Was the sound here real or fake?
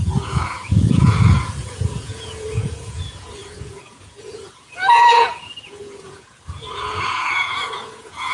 fake